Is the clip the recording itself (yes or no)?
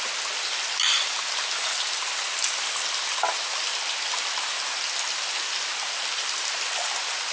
yes